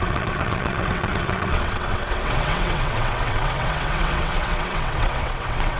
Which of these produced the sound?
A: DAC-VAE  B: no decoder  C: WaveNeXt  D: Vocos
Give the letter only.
C